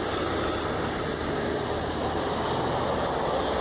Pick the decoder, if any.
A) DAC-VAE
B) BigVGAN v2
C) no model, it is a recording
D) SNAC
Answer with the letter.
C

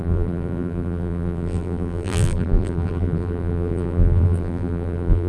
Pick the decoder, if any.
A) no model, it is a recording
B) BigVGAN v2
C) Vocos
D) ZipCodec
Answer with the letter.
B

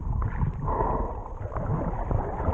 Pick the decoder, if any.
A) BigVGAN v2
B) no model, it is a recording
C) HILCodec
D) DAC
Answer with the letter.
B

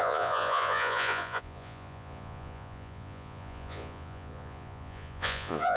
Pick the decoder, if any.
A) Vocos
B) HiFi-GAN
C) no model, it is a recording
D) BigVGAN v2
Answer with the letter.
A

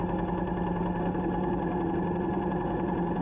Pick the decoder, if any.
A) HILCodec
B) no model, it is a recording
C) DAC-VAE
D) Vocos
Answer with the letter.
B